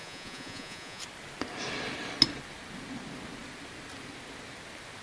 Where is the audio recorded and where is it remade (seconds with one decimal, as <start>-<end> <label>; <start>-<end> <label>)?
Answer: 0.0-1.0 remade; 1.0-5.0 recorded

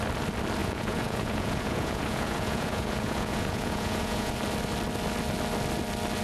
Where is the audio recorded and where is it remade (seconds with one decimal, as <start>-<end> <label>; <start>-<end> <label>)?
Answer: 0.0-0.6 recorded; 0.6-4.3 remade; 4.3-6.2 recorded

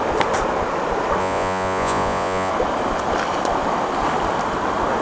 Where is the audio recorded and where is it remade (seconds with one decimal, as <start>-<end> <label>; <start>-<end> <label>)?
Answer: 0.0-1.2 recorded; 1.2-2.5 remade; 2.5-5.0 recorded